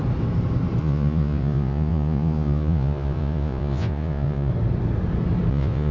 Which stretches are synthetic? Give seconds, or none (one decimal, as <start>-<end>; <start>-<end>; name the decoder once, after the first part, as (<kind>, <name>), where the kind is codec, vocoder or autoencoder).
0.8-4.5 (vocoder, Vocos); 5.5-5.9